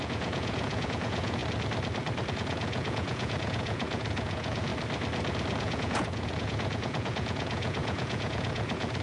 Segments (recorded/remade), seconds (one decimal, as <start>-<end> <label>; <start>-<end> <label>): 0.0-1.4 remade; 1.4-2.3 recorded; 2.3-4.7 remade; 4.7-5.6 recorded; 5.6-9.0 remade